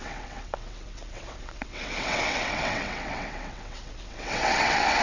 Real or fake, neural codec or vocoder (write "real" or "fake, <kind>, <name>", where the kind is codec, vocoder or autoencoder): fake, vocoder, WaveNeXt